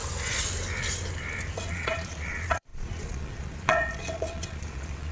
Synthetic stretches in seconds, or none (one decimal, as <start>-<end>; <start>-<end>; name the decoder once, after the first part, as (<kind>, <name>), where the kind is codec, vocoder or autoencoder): 1.7-5.1 (vocoder, Vocos)